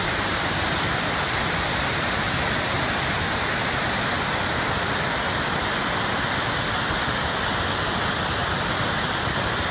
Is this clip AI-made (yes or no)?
no